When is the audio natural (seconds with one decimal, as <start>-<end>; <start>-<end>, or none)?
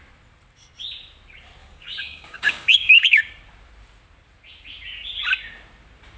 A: 0.0-1.6; 3.3-6.2